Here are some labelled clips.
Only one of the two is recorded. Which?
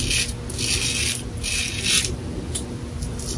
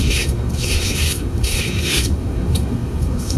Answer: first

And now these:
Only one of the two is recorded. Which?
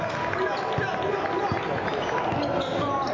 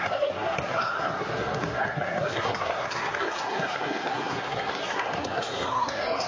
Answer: first